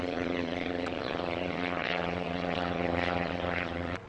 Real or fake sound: fake